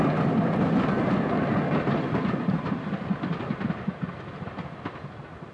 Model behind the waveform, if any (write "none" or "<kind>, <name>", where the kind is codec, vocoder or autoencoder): none